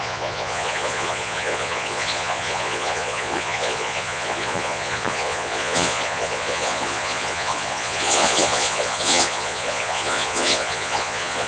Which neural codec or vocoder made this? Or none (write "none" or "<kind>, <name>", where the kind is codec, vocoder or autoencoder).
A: vocoder, Vocos